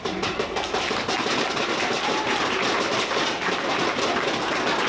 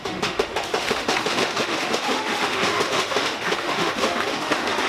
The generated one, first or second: second